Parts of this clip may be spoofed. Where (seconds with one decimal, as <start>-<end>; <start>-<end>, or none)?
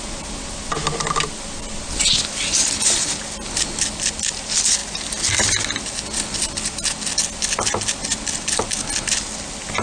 none